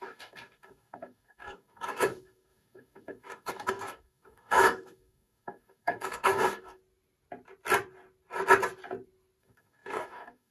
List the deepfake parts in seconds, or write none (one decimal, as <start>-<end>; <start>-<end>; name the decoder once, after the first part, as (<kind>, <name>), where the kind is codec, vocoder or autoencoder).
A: 0.0-6.8 (codec, DAC); 9.4-10.5